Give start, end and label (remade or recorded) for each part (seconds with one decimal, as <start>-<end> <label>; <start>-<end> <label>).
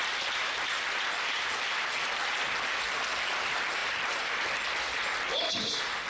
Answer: 0.0-1.3 remade; 1.3-3.8 recorded; 3.8-5.5 remade; 5.5-6.1 recorded